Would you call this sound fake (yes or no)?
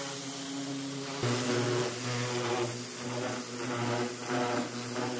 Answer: no